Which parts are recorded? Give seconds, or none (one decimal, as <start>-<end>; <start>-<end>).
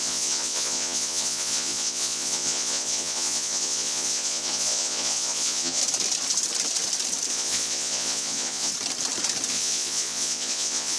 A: 5.8-7.3; 8.7-9.5